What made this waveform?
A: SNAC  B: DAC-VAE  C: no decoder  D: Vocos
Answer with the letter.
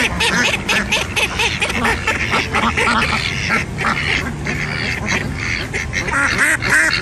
C